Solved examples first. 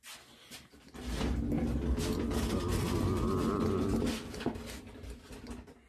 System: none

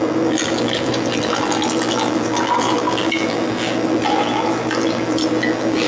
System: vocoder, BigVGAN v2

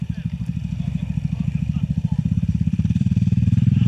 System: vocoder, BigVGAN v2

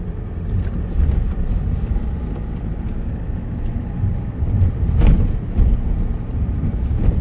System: vocoder, BigVGAN v2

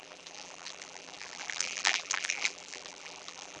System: vocoder, BigVGAN v2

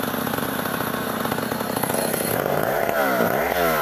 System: none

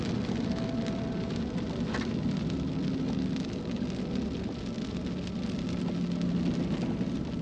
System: none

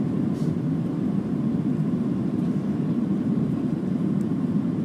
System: vocoder, BigVGAN v2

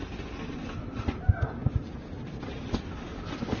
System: none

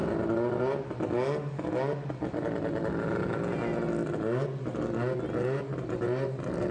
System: none